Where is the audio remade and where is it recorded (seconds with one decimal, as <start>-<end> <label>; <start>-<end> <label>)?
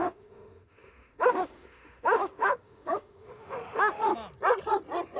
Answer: 0.0-4.1 remade; 4.1-5.2 recorded